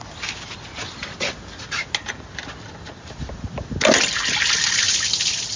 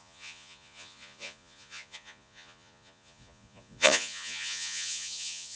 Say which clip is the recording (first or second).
first